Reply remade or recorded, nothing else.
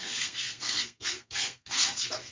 remade